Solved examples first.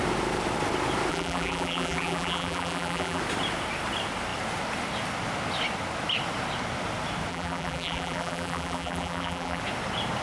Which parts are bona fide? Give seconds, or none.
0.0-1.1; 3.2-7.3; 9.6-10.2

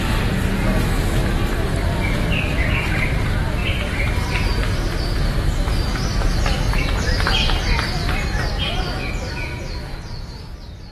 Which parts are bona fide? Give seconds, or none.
0.0-1.8; 3.1-3.6; 5.0-10.9

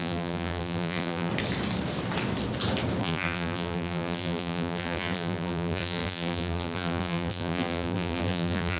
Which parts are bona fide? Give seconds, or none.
1.3-3.0

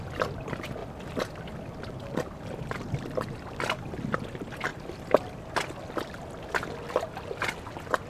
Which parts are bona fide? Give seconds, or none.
0.0-0.8; 3.6-4.7; 5.4-8.1

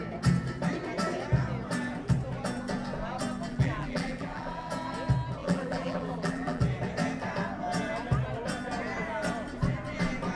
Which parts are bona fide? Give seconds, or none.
0.0-3.5; 4.7-5.4; 6.6-10.4